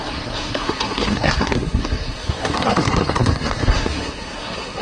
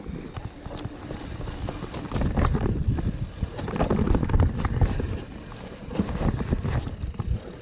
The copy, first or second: first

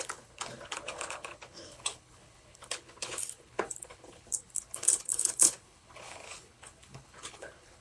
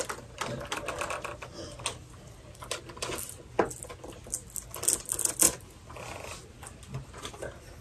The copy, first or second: first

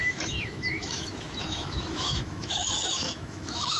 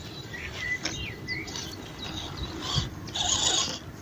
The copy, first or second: first